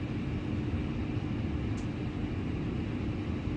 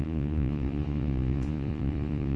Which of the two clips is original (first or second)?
first